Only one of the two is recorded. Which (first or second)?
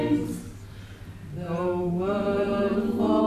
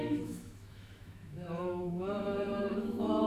first